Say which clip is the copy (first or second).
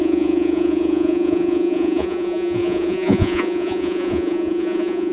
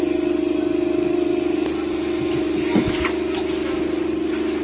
first